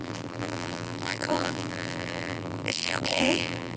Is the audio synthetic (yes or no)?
yes